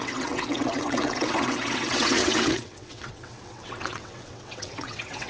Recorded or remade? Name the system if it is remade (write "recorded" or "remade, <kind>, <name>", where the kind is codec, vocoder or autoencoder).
remade, vocoder, WaveNeXt